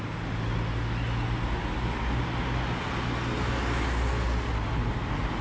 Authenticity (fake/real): real